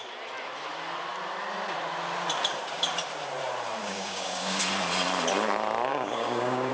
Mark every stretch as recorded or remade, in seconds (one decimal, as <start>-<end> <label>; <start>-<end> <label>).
0.0-3.8 recorded; 3.8-4.6 remade; 4.6-5.9 recorded; 5.9-6.7 remade